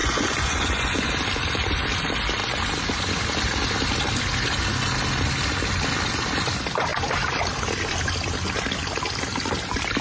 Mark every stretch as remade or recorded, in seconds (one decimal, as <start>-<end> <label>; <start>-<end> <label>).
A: 0.0-1.1 remade; 1.1-10.0 recorded